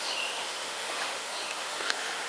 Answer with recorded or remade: remade